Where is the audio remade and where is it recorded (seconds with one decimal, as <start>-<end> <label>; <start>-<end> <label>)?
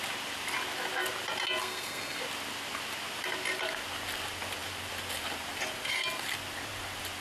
0.0-1.6 recorded; 1.6-2.2 remade; 2.2-7.2 recorded